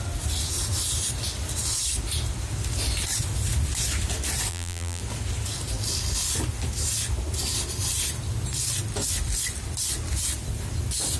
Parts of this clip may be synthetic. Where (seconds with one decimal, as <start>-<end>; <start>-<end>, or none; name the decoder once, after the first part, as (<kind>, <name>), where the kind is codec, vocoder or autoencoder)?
4.5-5.0 (vocoder, BigVGAN v2)